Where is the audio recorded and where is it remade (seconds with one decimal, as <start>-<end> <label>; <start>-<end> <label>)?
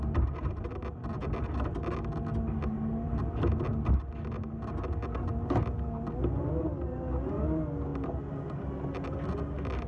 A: 0.0-9.9 recorded